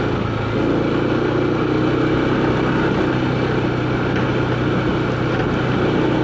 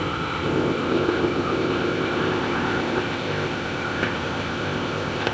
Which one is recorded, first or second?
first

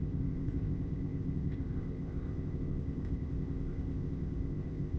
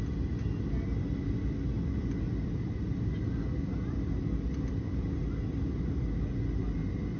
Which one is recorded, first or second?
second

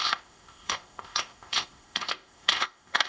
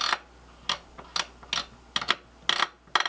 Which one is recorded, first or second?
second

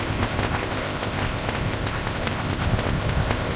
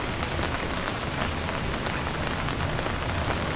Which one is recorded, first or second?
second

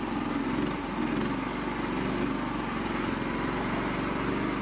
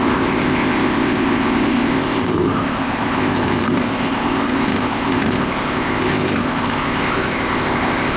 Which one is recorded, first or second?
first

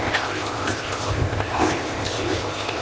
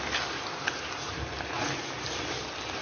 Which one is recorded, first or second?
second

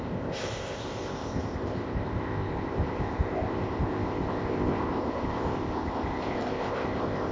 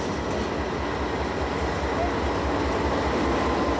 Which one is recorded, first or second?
second